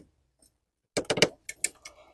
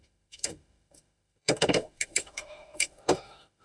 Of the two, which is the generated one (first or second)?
second